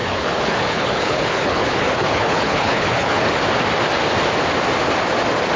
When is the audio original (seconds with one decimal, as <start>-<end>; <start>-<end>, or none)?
3.3-5.6